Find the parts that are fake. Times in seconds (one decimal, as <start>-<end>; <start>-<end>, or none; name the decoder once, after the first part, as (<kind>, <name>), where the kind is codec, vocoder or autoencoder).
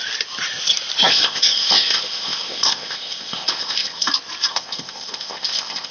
1.1-4.1 (codec, ZipCodec); 4.5-5.9